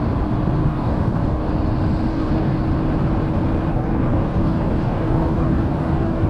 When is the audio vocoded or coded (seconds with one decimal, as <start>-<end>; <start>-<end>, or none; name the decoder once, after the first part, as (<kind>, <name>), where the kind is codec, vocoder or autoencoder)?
0.6-1.5 (codec, DAC); 2.1-2.6; 3.7-6.3